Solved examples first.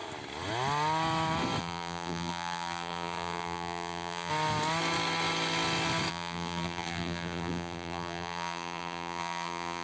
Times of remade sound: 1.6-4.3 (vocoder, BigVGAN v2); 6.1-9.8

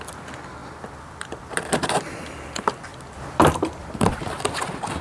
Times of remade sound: 0.6-1.7 (vocoder, BigVGAN v2); 2.9-4.3

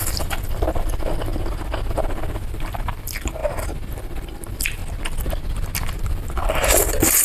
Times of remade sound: 0.0-1.3 (vocoder, BigVGAN v2); 1.9-3.4; 3.9-4.8; 6.0-7.2

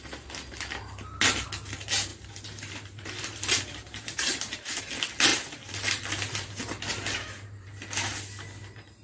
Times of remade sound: 2.1-4.8 (vocoder, BigVGAN v2); 5.3-6.0; 6.9-7.7

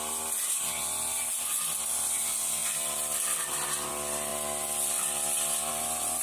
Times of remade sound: none